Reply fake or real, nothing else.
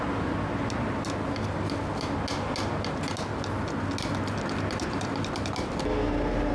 real